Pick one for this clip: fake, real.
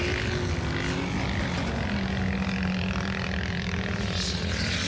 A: real